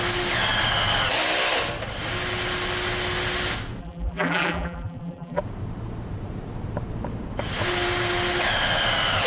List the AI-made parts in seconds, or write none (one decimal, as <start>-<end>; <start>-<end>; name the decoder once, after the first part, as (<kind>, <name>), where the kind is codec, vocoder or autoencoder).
3.8-5.4 (vocoder, BigVGAN v2)